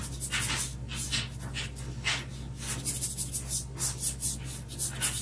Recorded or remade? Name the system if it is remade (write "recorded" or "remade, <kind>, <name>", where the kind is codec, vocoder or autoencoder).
recorded